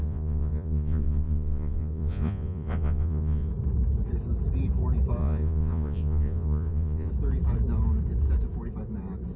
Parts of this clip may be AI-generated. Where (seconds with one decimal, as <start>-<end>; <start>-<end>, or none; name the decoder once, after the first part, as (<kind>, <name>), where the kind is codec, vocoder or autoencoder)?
0.0-3.5 (vocoder, Vocos); 5.2-7.1